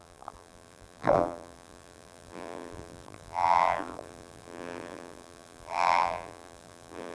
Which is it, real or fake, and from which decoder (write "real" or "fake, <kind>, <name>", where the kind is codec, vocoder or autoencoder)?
fake, vocoder, BigVGAN v2